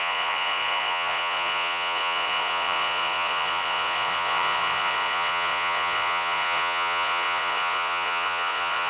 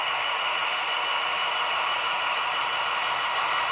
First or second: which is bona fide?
second